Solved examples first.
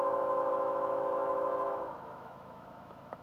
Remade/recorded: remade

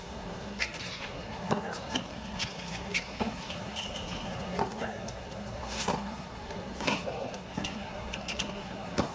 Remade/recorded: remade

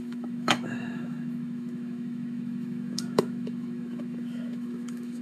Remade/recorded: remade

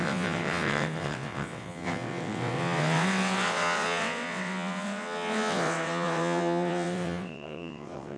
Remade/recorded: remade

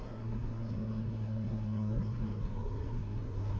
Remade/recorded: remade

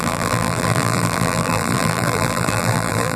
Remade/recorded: remade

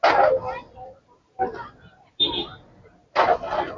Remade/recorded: recorded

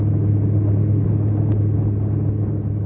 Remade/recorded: recorded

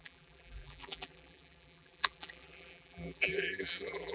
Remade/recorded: remade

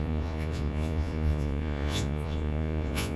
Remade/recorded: remade